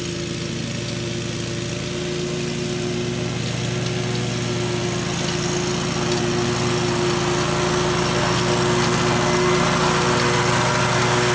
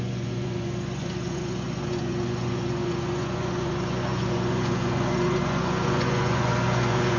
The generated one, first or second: second